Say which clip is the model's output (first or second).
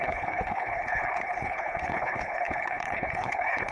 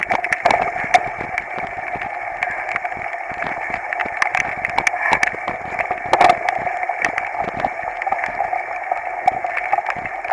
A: first